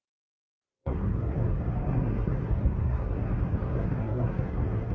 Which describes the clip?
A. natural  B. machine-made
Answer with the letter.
B